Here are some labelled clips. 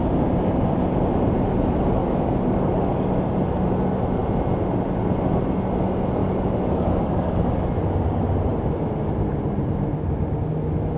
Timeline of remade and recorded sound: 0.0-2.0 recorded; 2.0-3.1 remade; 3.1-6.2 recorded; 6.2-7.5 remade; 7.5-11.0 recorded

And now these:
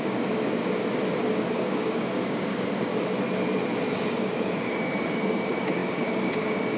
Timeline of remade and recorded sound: 0.0-0.6 remade; 0.6-1.2 recorded; 1.2-2.9 remade; 2.9-3.9 recorded; 3.9-6.8 remade

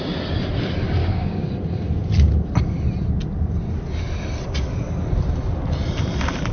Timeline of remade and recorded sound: 0.0-1.0 recorded; 1.0-1.5 remade; 1.5-6.5 recorded